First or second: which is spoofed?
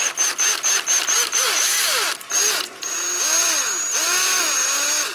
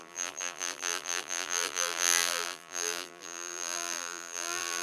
second